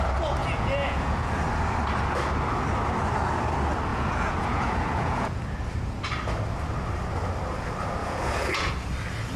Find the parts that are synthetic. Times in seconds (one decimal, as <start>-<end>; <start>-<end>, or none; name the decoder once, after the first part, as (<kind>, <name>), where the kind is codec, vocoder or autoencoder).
0.4-1.3 (vocoder, Vocos); 3.9-5.4; 8.0-8.7